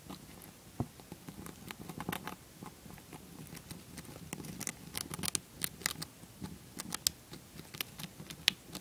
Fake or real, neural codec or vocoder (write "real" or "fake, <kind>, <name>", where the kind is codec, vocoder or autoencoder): real